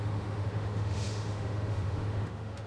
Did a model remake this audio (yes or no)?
yes